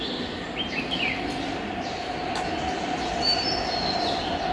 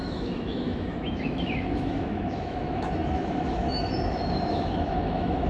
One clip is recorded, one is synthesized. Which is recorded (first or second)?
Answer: first